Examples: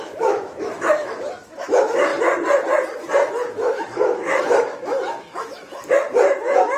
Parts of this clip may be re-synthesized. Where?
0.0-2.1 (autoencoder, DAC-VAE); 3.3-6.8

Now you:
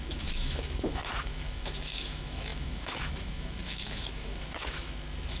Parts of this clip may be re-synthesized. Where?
0.0-5.4 (autoencoder, DAC-VAE)

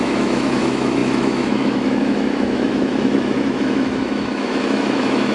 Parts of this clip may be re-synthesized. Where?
0.0-5.3 (autoencoder, DAC-VAE)